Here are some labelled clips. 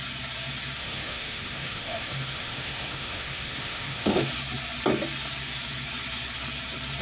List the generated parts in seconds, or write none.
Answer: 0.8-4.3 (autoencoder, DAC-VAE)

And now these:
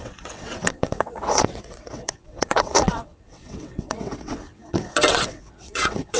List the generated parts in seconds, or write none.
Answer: 0.0-6.2 (vocoder, WaveNeXt)

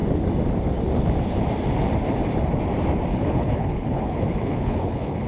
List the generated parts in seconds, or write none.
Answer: 3.1-5.3 (codec, HILCodec)

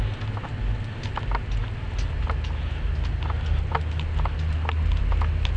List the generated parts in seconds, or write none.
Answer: none